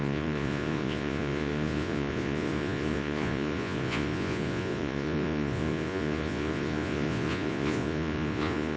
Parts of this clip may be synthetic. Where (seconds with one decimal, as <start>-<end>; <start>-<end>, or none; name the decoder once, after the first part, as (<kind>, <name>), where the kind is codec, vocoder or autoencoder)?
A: 0.0-8.8 (vocoder, Vocos)

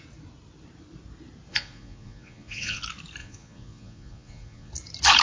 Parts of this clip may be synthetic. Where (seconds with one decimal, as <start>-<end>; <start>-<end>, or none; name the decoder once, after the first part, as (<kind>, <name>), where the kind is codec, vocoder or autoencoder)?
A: 1.5-2.8 (vocoder, Vocos); 3.2-4.7

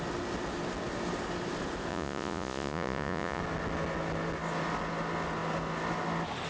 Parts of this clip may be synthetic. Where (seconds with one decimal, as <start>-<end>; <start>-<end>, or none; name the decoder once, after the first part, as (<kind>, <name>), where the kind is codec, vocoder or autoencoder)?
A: 1.9-3.4 (vocoder, Vocos)

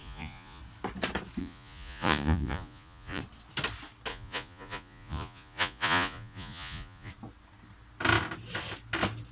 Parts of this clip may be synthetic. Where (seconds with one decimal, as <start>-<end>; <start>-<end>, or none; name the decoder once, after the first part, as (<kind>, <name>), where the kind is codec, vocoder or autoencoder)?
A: 0.0-0.6 (vocoder, Vocos); 1.4-3.2; 4.1-7.1

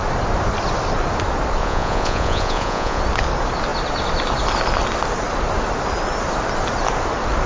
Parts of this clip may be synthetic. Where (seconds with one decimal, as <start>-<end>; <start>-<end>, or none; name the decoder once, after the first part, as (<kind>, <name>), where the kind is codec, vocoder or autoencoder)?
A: 1.6-3.0 (vocoder, Vocos)

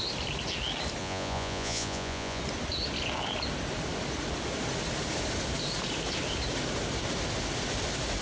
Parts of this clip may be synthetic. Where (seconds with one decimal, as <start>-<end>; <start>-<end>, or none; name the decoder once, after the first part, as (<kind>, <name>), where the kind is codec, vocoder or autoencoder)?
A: 1.0-2.4 (vocoder, Vocos)

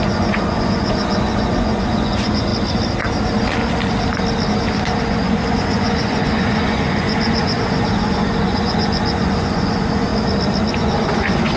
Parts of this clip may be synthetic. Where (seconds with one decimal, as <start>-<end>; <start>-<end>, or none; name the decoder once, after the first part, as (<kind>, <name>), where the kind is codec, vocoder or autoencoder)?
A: 0.0-2.5 (vocoder, Vocos); 5.0-10.1; 10.7-11.6

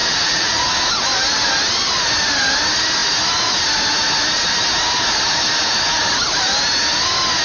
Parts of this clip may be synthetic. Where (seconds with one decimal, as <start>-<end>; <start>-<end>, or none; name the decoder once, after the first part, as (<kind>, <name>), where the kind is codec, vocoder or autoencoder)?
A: 0.0-0.6 (vocoder, Vocos)